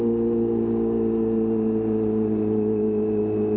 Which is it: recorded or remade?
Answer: recorded